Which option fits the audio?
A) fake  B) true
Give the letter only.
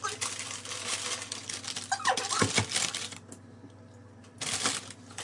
B